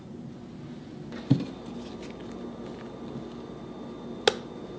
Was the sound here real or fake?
real